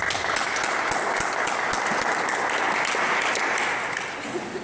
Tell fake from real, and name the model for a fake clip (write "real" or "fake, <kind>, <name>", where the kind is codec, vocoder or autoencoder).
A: real